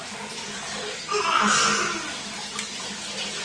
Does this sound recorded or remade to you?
recorded